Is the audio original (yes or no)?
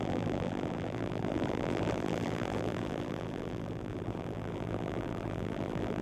no